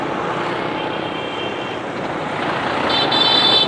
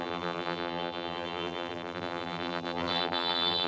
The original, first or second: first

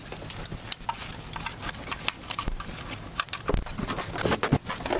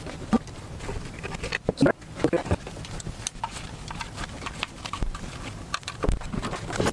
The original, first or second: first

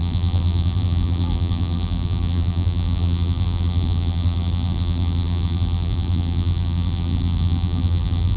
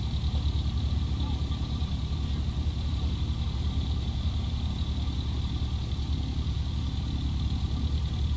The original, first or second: second